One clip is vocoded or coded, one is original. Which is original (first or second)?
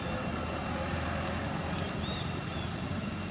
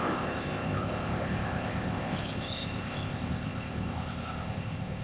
first